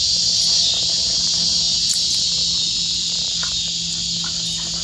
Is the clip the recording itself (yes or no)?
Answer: yes